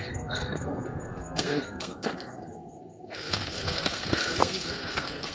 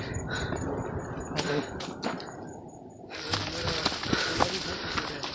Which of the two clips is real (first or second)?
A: second